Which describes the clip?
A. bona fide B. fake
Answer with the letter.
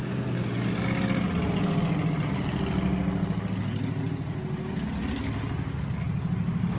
A